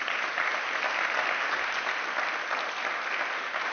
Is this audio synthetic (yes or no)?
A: no